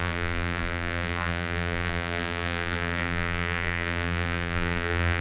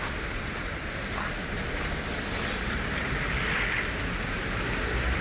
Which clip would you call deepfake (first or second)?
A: first